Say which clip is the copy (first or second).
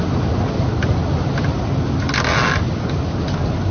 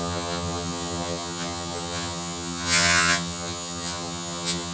second